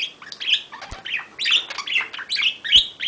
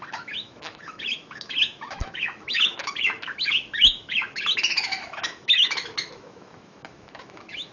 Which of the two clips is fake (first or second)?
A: second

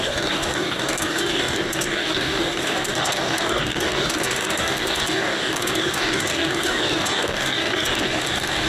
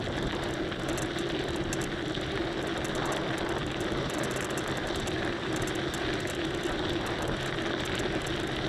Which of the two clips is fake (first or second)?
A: first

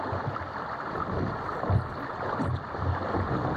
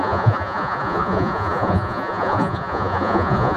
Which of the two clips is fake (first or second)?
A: second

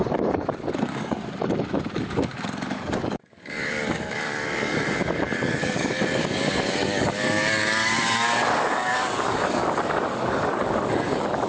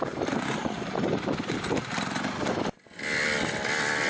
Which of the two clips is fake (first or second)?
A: first